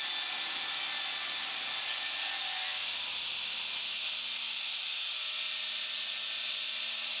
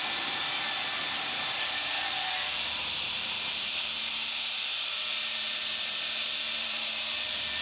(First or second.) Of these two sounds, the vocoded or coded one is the second